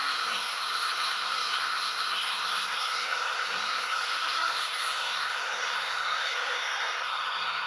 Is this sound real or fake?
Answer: fake